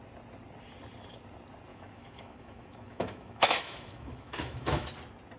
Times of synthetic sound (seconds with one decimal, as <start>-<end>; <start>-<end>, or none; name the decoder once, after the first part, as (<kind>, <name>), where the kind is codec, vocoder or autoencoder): 1.7-4.9 (autoencoder, DAC-VAE)